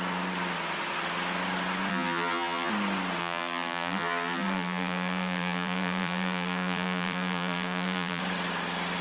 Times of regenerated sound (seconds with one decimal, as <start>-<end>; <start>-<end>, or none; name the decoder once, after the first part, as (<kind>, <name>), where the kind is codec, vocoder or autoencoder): 1.9-2.7 (vocoder, BigVGAN v2); 3.2-8.2